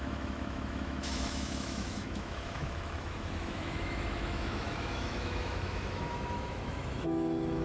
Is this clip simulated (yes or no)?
yes